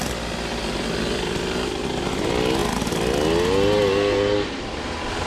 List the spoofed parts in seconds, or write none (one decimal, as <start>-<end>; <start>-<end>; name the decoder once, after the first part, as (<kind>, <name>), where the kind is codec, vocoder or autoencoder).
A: none